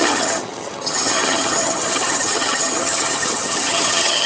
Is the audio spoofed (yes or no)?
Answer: yes